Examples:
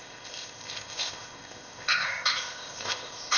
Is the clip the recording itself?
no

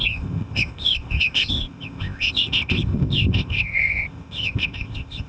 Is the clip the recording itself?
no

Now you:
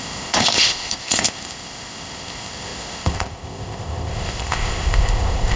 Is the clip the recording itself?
no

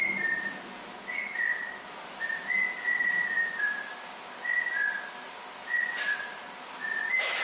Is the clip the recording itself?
yes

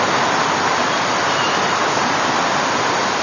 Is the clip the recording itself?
yes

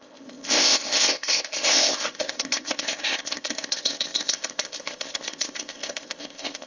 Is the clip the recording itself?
no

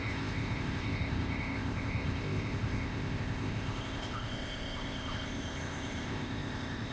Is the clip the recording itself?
no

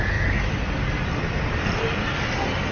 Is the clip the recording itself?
yes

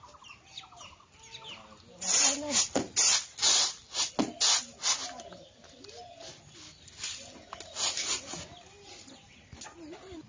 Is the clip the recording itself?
yes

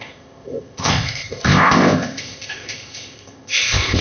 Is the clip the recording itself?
no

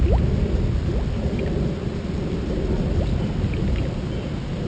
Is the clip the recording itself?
yes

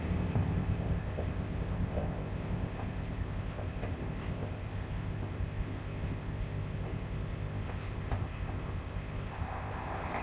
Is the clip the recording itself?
no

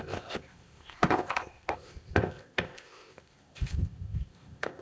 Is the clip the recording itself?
no